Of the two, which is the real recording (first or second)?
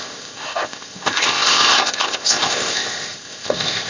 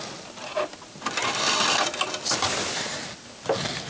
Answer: second